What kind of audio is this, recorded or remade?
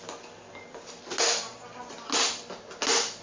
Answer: recorded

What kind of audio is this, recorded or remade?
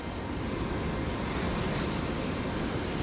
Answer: recorded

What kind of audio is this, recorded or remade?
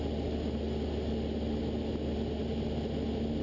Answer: recorded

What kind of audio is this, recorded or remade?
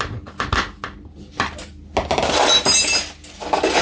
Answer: recorded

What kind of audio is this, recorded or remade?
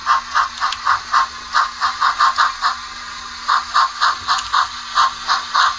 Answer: recorded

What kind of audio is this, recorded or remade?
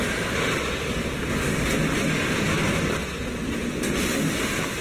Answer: recorded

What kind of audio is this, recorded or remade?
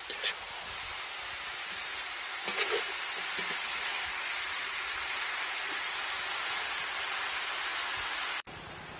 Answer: recorded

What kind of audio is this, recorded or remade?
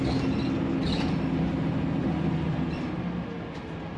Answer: recorded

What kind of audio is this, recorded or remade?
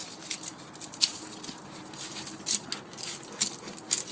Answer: recorded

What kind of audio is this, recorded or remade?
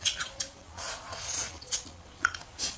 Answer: remade